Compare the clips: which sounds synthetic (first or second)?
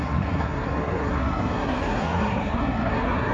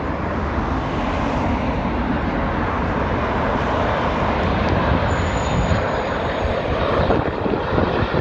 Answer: first